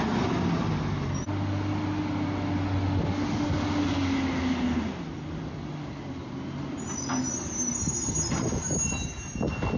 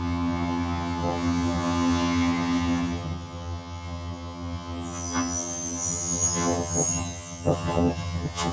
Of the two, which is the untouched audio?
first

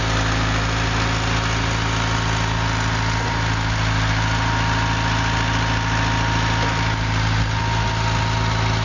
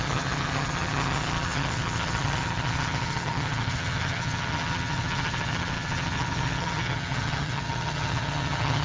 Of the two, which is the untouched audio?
first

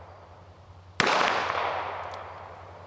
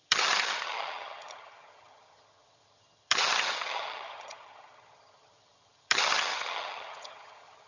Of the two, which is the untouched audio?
first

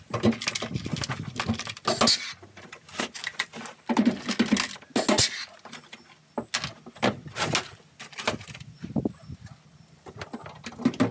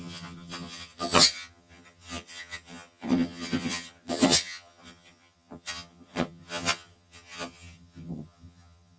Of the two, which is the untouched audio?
first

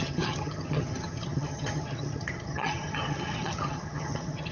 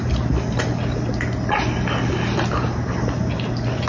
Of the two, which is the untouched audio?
second